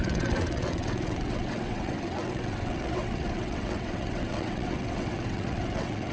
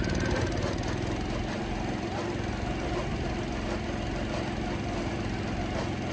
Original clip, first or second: second